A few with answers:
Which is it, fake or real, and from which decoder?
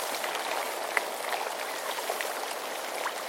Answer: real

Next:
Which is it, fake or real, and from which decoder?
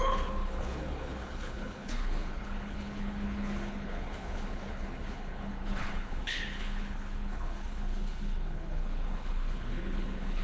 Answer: fake, codec, HILCodec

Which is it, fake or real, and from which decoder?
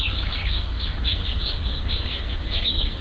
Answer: fake, codec, SNAC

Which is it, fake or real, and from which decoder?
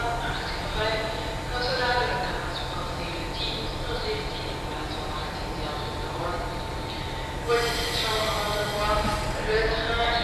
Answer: real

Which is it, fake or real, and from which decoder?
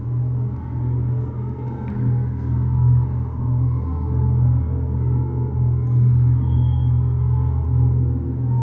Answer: fake, codec, SNAC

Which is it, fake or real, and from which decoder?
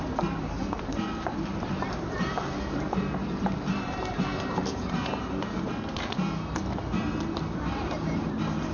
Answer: fake, vocoder, BigVGAN v2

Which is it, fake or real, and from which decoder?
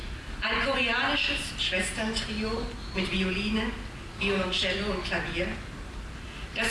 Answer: real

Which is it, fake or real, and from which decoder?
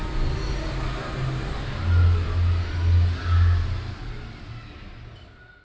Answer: real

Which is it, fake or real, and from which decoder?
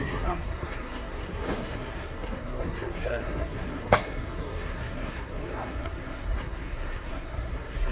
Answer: fake, codec, SNAC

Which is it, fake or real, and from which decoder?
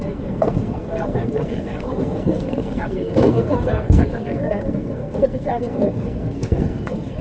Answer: fake, codec, SNAC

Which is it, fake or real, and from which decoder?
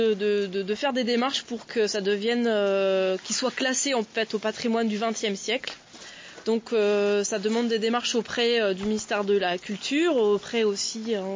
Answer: real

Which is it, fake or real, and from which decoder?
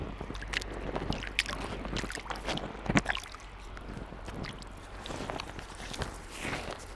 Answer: real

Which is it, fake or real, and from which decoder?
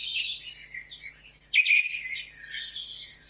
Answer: real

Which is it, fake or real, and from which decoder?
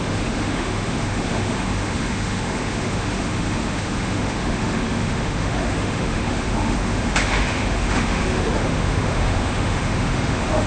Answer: fake, autoencoder, DAC-VAE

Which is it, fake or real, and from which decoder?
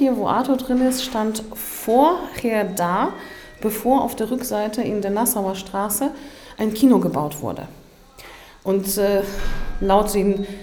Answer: real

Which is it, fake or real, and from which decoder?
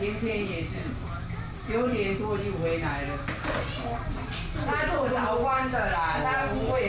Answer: real